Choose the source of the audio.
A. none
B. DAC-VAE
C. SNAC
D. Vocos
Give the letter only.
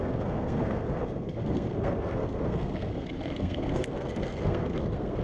C